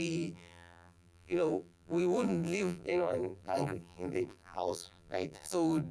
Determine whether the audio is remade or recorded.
remade